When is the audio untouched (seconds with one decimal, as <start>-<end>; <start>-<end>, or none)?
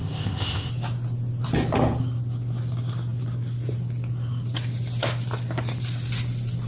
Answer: 0.7-6.7